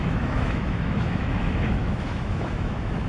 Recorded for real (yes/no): no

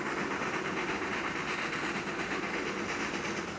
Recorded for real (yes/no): yes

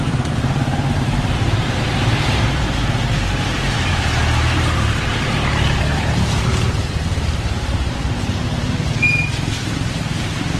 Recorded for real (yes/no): no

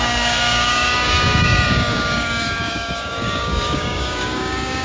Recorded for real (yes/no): no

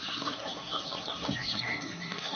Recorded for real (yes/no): no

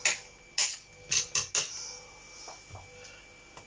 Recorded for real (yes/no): yes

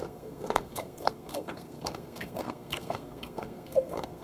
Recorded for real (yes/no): no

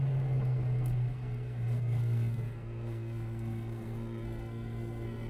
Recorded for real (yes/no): no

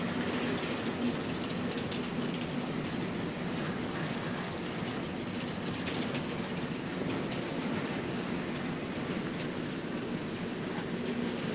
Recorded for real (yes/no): yes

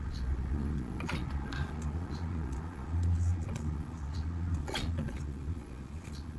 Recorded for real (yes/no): no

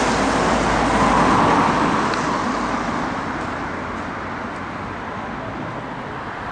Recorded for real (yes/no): yes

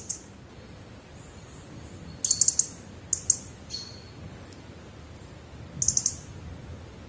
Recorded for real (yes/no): yes